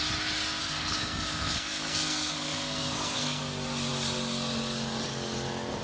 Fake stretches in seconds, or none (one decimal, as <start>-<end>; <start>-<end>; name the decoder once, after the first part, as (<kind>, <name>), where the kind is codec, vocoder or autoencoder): 0.6-3.4 (codec, SNAC)